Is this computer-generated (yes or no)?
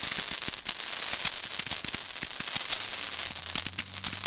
no